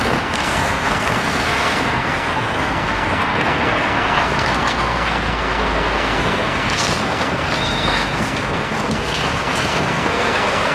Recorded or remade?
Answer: remade